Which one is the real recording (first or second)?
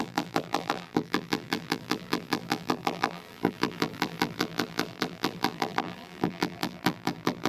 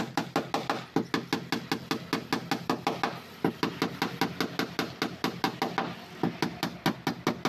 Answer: second